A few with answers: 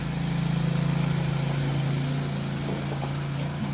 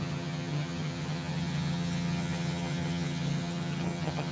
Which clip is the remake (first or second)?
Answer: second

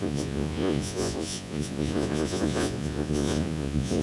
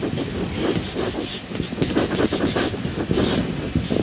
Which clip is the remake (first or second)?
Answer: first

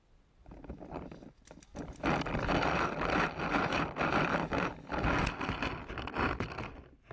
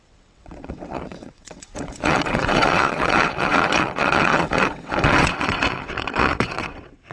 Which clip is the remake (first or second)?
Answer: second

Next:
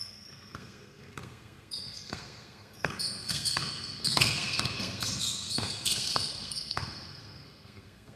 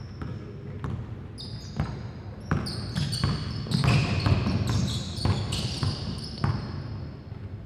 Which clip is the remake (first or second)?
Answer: first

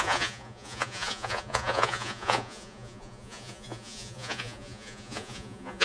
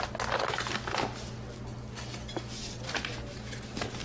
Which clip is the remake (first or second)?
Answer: first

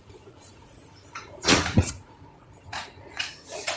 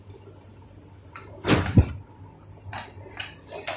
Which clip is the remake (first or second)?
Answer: first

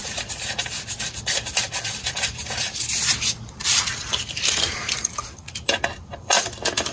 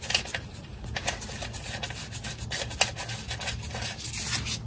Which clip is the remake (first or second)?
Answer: first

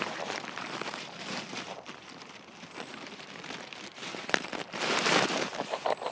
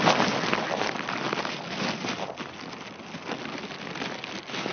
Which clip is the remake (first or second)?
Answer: first